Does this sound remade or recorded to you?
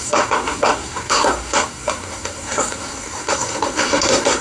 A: remade